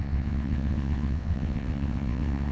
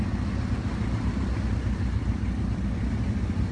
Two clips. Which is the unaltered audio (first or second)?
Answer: second